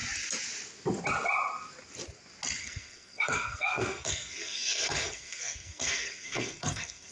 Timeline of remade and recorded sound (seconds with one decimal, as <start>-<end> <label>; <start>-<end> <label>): 0.0-2.6 recorded; 2.6-7.1 remade